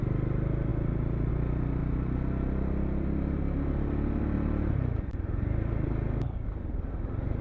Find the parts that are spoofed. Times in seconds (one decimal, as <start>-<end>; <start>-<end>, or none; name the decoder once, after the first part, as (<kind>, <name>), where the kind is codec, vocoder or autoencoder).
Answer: none